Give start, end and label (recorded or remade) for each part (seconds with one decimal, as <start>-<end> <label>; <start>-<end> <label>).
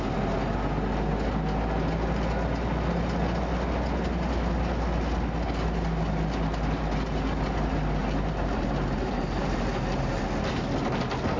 0.0-8.0 recorded; 8.0-10.2 remade; 10.2-11.4 recorded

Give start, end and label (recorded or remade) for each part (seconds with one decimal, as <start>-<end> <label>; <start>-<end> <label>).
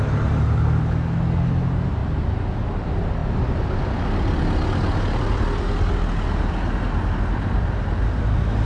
0.0-8.7 recorded